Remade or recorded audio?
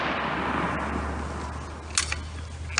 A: recorded